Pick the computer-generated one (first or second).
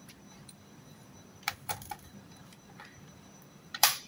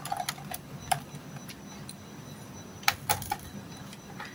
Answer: first